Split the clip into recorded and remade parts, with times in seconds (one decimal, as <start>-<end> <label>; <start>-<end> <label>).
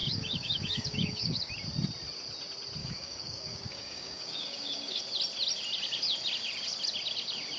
0.0-1.5 remade; 1.5-2.8 recorded; 2.8-5.0 remade; 5.0-7.6 recorded